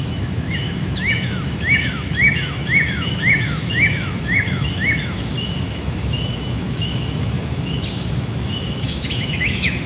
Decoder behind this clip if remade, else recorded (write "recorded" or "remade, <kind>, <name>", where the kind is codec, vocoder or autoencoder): remade, autoencoder, DAC-VAE